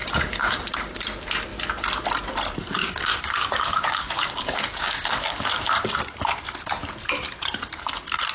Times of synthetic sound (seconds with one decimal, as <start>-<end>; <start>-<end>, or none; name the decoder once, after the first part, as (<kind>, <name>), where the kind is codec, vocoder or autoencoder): 0.0-1.0 (codec, DAC); 2.8-5.7